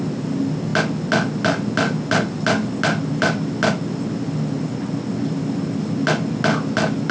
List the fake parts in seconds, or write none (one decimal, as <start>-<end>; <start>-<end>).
none